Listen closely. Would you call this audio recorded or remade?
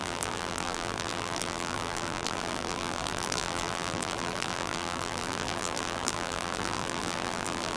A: remade